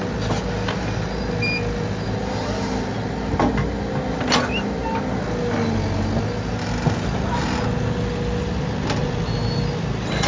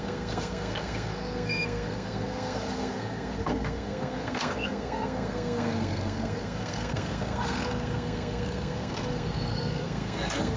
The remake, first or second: second